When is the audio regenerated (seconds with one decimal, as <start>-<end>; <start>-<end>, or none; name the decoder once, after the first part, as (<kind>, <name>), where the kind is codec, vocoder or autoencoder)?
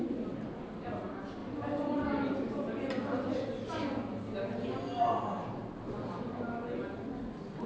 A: none